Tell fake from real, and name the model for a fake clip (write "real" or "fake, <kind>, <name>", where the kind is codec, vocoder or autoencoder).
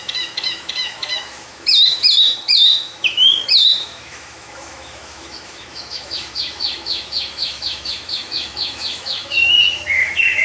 fake, autoencoder, DAC-VAE